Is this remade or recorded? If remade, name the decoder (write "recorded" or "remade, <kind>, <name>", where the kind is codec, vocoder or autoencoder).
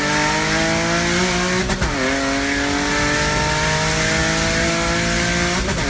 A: recorded